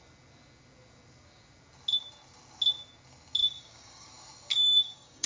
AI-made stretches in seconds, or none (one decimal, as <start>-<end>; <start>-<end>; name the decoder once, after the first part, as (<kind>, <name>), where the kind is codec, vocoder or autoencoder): 3.4-4.1 (codec, DAC); 4.5-5.3